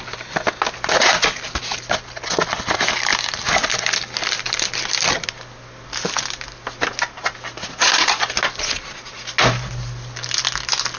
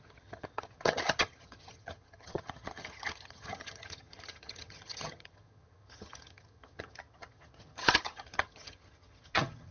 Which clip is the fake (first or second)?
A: second